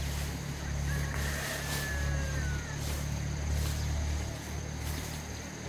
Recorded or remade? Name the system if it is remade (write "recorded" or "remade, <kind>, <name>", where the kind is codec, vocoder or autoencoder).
recorded